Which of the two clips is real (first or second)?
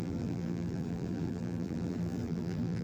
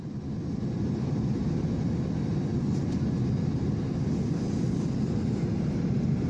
second